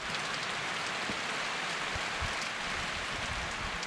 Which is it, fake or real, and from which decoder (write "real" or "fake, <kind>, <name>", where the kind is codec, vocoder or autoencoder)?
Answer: real